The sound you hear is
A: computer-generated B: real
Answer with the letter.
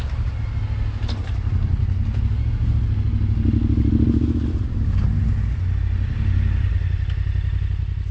B